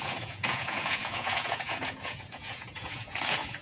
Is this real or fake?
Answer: fake